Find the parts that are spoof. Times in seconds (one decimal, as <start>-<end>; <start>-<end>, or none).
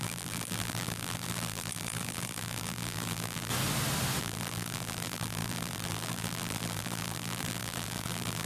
0.0-3.5; 4.2-8.5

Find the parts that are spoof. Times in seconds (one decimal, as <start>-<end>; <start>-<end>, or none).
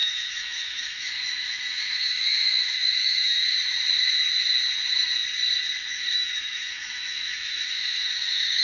0.0-3.4; 5.9-8.6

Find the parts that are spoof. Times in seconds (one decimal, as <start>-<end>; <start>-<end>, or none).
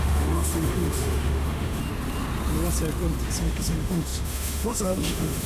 0.0-1.8; 3.4-5.5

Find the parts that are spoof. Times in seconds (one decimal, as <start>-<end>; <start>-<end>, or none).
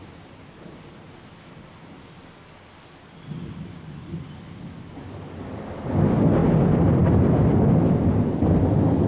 none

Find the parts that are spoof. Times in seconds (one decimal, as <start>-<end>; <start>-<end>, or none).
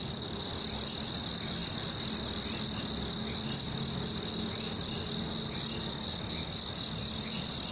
none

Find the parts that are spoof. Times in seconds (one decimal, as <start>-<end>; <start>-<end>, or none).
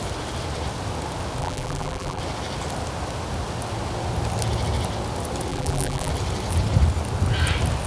1.4-2.2; 5.5-6.1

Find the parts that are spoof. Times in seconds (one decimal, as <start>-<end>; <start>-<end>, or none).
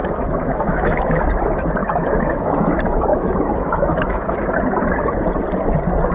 0.0-1.2; 1.8-2.7; 3.1-4.5